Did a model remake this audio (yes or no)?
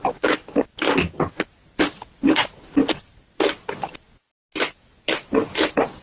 no